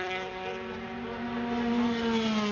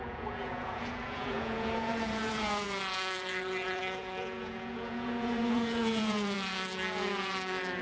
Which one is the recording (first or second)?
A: first